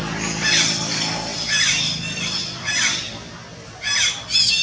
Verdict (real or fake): real